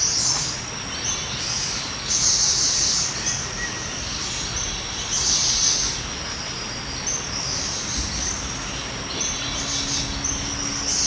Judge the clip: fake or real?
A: real